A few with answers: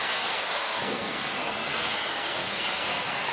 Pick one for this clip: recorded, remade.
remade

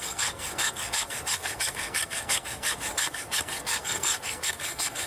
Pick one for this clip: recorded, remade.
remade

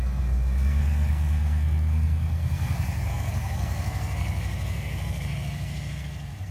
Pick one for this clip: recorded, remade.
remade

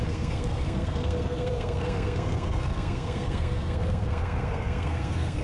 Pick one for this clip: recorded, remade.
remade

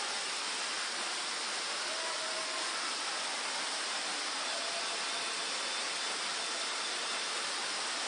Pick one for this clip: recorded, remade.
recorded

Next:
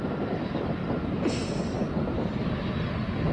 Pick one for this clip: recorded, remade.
recorded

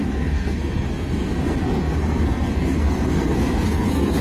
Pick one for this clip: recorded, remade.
remade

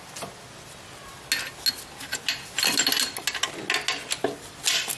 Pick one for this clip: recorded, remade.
recorded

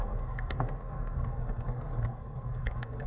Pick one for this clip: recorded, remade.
remade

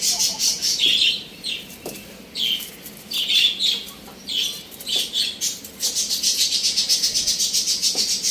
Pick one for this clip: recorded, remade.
recorded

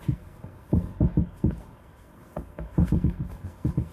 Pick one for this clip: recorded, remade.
remade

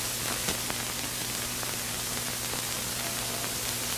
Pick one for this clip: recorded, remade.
recorded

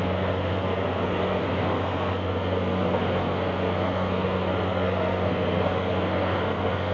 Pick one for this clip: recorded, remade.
remade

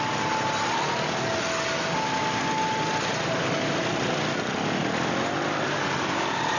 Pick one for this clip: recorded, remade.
recorded